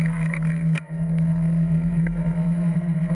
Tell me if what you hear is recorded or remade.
remade